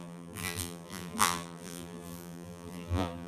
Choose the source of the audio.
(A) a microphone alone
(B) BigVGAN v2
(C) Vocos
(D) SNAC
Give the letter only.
B